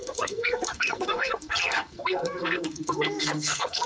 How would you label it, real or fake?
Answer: fake